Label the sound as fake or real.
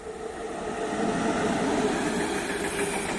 real